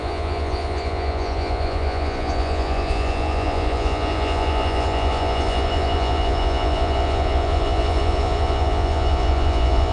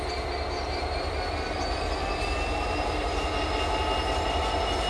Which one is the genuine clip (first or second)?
second